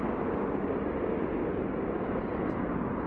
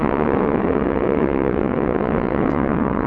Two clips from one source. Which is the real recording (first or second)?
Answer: first